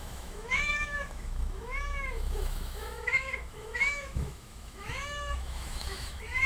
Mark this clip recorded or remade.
remade